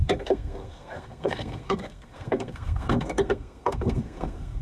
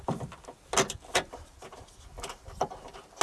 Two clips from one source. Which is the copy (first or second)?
first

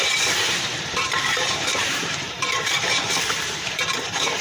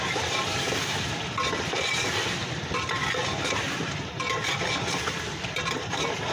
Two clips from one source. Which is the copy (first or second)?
first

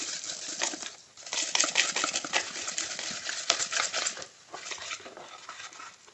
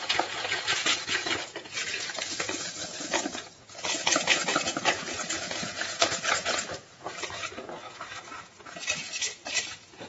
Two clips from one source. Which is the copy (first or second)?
second